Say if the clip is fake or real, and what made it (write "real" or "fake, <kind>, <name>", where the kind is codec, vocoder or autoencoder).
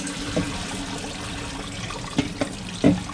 real